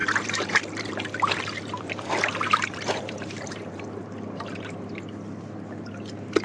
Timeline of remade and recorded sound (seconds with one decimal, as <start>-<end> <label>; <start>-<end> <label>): 0.0-3.8 remade; 3.8-6.4 recorded